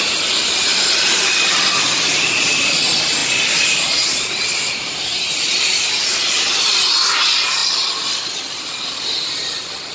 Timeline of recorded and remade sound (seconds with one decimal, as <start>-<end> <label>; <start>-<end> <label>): 0.0-0.7 recorded; 0.7-1.2 remade; 1.2-3.2 recorded; 3.2-5.3 remade; 5.3-9.9 recorded